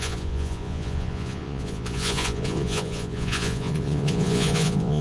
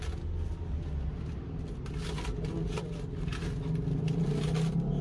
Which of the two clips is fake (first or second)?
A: first